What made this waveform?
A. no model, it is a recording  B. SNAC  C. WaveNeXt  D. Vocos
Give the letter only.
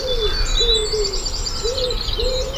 A